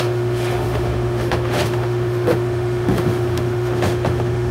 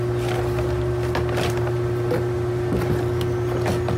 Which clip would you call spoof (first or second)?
first